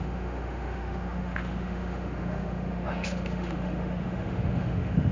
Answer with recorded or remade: remade